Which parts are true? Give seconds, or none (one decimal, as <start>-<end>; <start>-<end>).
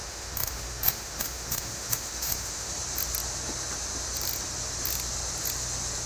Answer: 2.7-6.1